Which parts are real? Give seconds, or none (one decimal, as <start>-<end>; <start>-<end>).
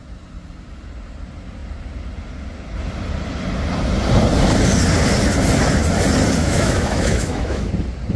0.0-6.4; 7.7-8.2